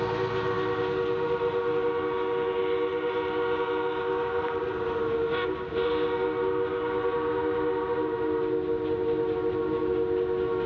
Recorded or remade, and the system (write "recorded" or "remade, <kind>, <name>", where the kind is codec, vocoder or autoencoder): recorded